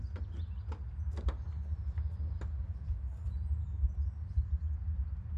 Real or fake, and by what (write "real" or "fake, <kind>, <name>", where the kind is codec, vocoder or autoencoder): real